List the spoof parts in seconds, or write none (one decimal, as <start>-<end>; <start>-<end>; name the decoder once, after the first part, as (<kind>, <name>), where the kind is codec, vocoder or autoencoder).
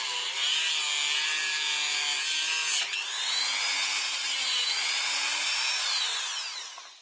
0.0-0.4 (vocoder, BigVGAN v2); 4.0-6.1